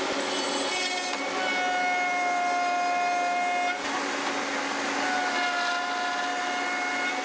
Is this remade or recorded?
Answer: recorded